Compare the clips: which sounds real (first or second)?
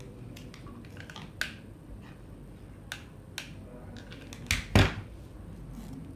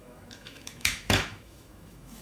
first